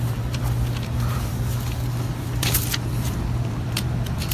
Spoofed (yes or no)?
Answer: yes